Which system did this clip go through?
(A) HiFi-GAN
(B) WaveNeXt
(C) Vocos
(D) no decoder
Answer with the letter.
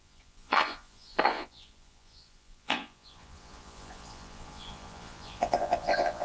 C